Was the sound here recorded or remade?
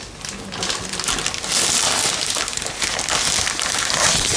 recorded